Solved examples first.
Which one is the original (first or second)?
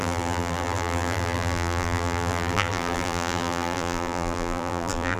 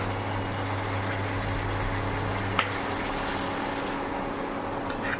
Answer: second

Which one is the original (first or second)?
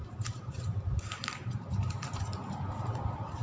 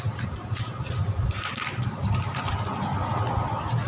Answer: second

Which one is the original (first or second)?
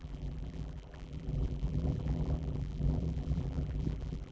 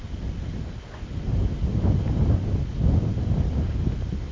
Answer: second